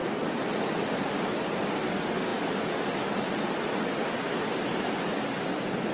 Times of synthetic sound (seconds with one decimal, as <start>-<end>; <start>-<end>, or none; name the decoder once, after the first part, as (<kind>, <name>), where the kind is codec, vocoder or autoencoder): none